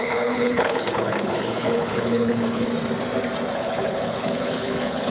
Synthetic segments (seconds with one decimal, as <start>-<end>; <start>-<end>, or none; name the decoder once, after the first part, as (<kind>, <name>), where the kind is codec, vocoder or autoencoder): 0.0-2.7 (codec, HILCodec); 3.5-5.1